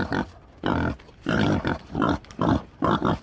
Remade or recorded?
recorded